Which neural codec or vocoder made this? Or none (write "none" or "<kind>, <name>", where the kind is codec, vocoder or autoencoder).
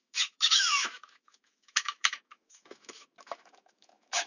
autoencoder, DAC-VAE